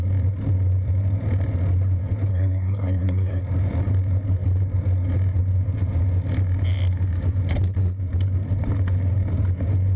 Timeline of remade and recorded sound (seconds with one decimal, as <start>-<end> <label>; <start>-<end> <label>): 0.0-2.3 recorded; 2.3-3.4 remade; 3.4-10.0 recorded